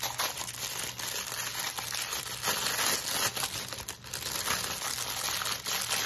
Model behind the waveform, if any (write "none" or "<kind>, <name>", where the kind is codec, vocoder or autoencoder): none